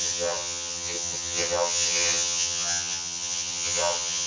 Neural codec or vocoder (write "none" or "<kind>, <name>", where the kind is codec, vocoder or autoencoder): vocoder, HiFi-GAN